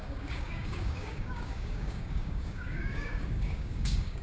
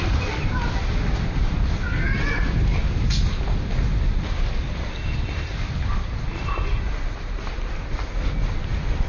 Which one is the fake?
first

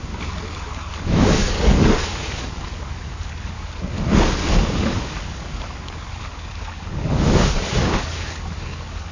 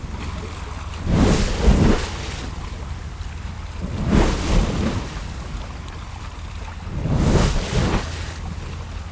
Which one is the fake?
first